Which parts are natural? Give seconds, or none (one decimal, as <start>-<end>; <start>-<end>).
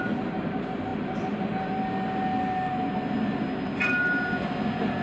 0.0-5.0